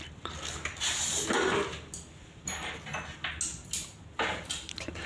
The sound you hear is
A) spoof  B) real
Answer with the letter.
B